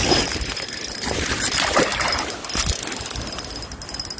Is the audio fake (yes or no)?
no